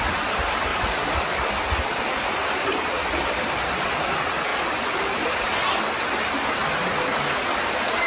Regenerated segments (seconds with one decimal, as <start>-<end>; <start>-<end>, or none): 0.7-2.0; 3.0-3.7